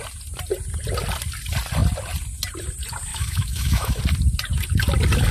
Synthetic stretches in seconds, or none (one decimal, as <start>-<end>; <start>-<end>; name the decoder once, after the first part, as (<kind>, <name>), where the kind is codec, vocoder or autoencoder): 3.1-4.0 (autoencoder, DAC-VAE)